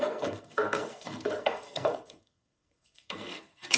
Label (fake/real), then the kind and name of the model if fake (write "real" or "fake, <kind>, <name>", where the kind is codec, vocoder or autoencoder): fake, codec, SNAC